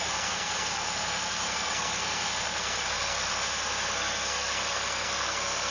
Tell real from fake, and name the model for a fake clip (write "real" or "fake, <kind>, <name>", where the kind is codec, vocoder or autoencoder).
fake, codec, SNAC